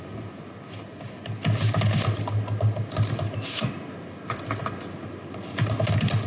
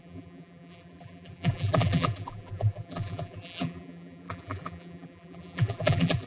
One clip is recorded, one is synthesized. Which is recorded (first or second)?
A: first